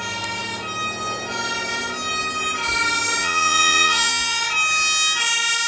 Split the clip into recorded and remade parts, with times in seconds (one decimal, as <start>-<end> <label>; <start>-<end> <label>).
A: 0.0-3.2 recorded; 3.2-4.4 remade; 4.4-5.7 recorded